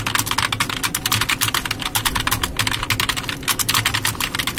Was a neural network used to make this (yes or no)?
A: no